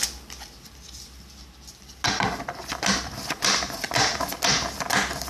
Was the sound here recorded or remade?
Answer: recorded